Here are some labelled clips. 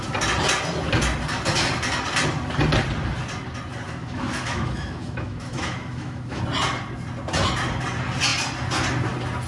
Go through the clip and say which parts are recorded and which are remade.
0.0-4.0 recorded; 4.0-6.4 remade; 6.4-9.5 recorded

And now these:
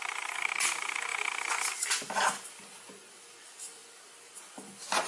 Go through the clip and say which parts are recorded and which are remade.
0.0-5.1 recorded

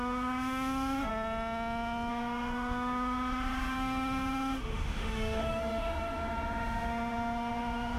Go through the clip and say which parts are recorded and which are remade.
0.0-1.1 remade; 1.1-2.1 recorded; 2.1-8.0 remade

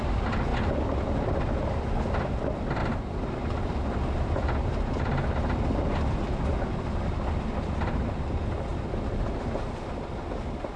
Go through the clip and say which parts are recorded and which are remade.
0.0-10.8 recorded

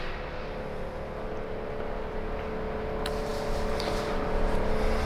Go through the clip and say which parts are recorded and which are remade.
0.0-5.1 recorded

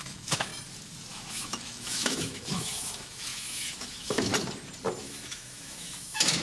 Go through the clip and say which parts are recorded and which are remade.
0.0-0.5 remade; 0.5-1.1 recorded; 1.1-4.3 remade; 4.3-5.0 recorded; 5.0-6.4 remade

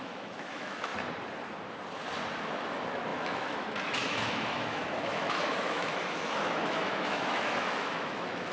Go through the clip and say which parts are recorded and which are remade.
0.0-0.9 remade; 0.9-2.4 recorded; 2.4-8.5 remade